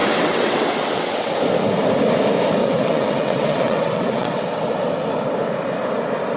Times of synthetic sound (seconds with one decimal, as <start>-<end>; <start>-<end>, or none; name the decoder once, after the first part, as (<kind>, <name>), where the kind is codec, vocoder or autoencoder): 0.0-1.4 (vocoder, WaveNeXt); 2.6-4.4